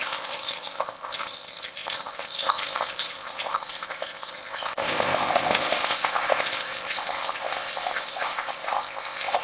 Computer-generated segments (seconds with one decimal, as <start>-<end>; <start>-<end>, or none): 0.0-9.4